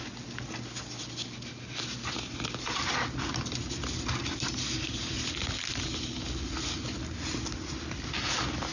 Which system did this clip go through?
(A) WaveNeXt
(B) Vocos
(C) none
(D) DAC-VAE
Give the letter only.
C